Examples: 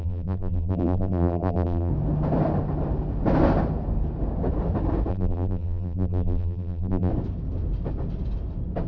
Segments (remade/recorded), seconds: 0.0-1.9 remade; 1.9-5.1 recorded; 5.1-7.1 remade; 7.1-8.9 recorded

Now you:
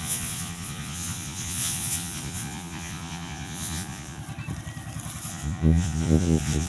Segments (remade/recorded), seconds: 0.0-4.2 remade; 4.2-5.3 recorded; 5.3-6.7 remade

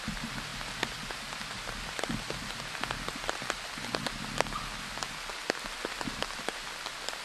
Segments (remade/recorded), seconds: 0.0-7.2 recorded

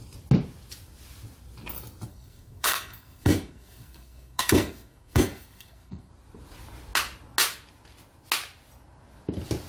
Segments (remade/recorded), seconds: 0.0-2.1 recorded; 2.1-6.1 remade; 6.1-9.7 recorded

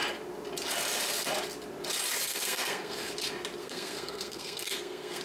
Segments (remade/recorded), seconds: 0.0-2.3 recorded; 2.3-3.1 remade; 3.1-3.6 recorded; 3.6-5.2 remade

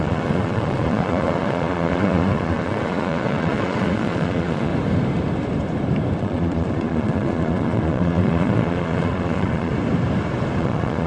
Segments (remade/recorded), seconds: 0.0-4.7 remade; 4.7-6.2 recorded; 6.2-9.7 remade; 9.7-10.6 recorded; 10.6-11.1 remade

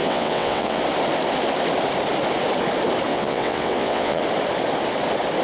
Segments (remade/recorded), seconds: 0.0-0.8 remade; 0.8-3.1 recorded; 3.1-4.2 remade; 4.2-5.4 recorded

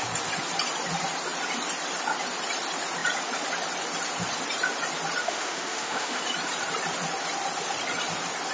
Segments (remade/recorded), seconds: 0.0-5.2 recorded; 5.2-6.2 remade; 6.2-8.5 recorded